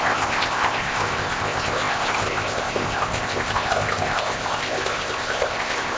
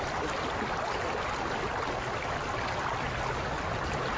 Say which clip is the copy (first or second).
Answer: first